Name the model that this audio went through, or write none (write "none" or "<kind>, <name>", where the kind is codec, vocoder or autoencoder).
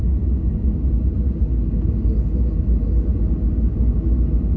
none